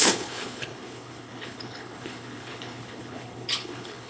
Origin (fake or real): fake